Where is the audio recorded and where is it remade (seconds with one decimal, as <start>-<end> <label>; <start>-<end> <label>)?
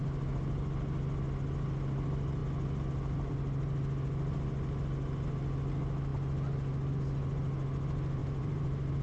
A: 0.0-8.2 recorded; 8.2-9.0 remade